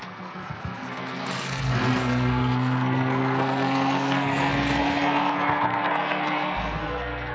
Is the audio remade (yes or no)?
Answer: yes